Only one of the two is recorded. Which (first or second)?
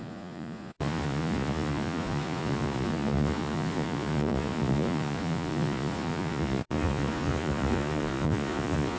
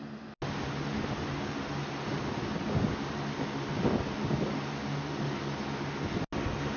second